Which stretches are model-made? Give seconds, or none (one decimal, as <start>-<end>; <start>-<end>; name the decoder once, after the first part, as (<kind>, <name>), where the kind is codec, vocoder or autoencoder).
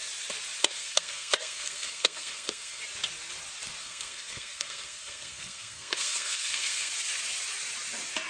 0.6-2.8 (codec, SNAC); 3.8-6.9